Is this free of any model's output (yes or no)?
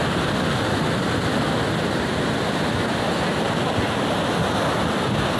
yes